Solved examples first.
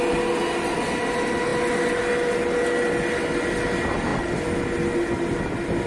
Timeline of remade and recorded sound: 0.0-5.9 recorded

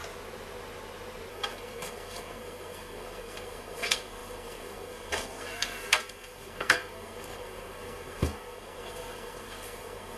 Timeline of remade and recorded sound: 0.0-1.3 recorded; 1.3-10.2 remade

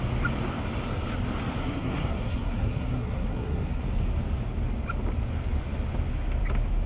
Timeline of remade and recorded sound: 0.0-1.6 recorded; 1.6-3.8 remade; 3.8-6.9 recorded

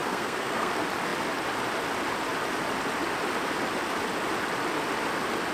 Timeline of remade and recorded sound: 0.0-0.7 remade; 0.7-5.5 recorded

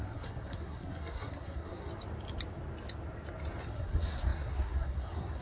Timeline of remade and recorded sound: 0.0-1.9 remade; 1.9-3.6 recorded; 3.6-5.4 remade

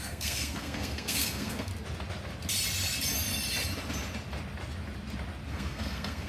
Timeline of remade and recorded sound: 0.0-1.7 remade; 1.7-5.5 recorded; 5.5-6.3 remade